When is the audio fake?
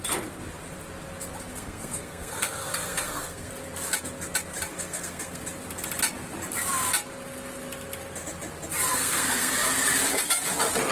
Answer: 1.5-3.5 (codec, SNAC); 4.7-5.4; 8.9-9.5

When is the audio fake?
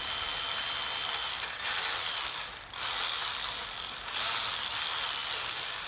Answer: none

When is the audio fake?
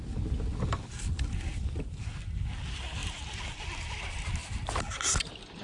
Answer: 0.5-2.2 (vocoder, BigVGAN v2)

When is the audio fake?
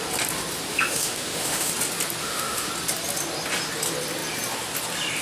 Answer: 0.7-1.7 (autoencoder, DAC-VAE); 2.2-2.7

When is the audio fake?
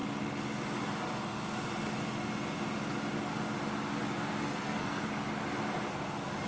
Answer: 4.4-5.0 (codec, SNAC)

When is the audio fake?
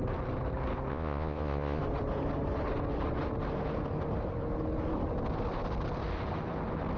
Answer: 0.9-1.8 (vocoder, Vocos)